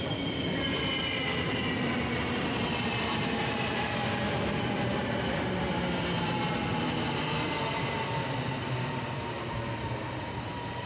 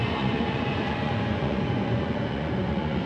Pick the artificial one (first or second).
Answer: second